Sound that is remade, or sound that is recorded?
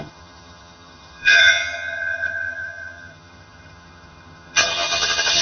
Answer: remade